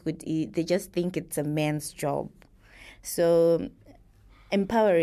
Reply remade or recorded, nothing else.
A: recorded